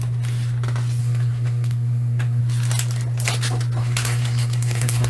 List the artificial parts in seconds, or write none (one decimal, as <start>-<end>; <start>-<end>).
1.0-2.4; 3.8-5.1